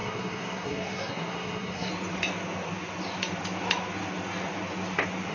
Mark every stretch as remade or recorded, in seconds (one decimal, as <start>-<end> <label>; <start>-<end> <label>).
0.0-1.9 remade; 1.9-5.3 recorded